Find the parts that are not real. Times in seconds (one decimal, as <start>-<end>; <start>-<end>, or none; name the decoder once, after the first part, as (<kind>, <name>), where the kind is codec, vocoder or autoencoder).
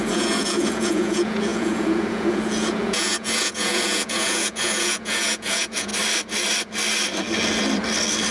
0.0-5.9 (vocoder, Vocos)